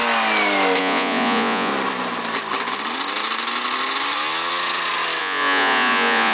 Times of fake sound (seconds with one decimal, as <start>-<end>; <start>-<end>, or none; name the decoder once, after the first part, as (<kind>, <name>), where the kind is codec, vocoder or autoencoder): 0.8-1.7 (vocoder, Vocos); 5.2-6.3